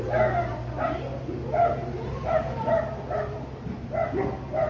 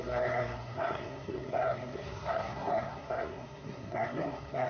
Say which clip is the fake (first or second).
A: second